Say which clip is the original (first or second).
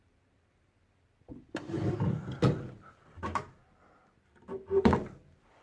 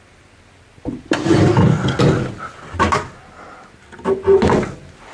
second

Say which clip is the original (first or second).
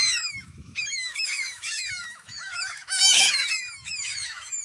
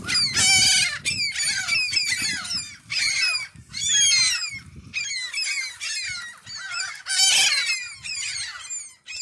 second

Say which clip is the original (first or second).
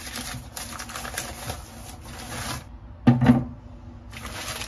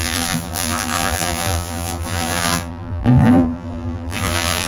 first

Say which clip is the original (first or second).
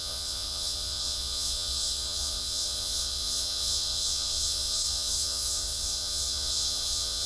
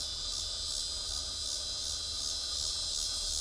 second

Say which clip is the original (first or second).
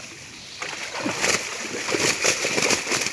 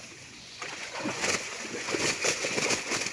first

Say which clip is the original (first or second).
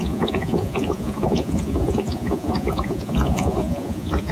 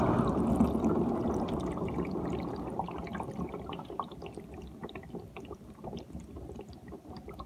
second